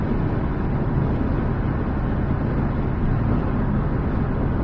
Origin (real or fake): real